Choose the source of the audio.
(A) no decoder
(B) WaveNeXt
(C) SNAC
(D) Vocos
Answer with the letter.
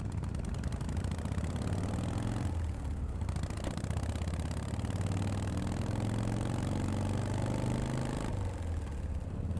A